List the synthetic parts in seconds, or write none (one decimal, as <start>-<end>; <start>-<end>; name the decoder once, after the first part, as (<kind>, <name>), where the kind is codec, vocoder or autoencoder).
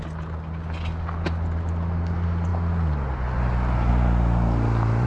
none